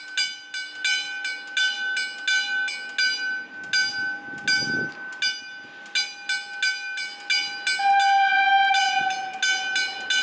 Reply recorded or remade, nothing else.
recorded